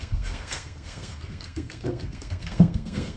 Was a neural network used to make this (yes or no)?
yes